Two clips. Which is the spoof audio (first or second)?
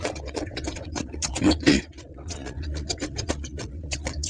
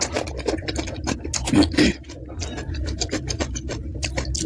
first